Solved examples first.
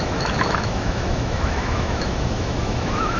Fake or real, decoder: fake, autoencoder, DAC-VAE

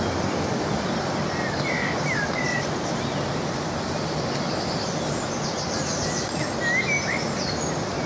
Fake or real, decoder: real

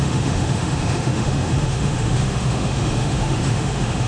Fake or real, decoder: fake, autoencoder, DAC-VAE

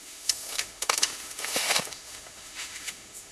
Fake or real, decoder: fake, autoencoder, DAC-VAE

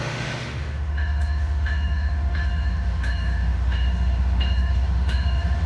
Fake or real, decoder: fake, autoencoder, DAC-VAE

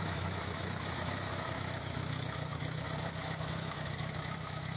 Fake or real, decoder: fake, autoencoder, DAC-VAE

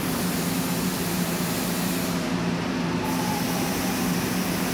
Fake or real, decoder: real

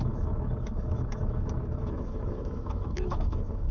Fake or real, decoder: fake, autoencoder, DAC-VAE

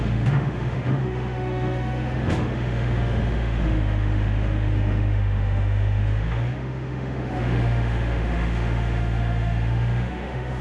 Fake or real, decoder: fake, autoencoder, DAC-VAE